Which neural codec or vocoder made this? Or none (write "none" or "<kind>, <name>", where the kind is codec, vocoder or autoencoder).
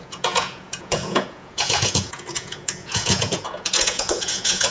vocoder, Vocos